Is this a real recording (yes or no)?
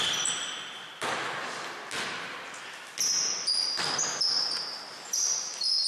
yes